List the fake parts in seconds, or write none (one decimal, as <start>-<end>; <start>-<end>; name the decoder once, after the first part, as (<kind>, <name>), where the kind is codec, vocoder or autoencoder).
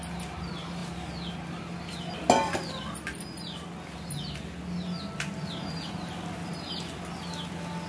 none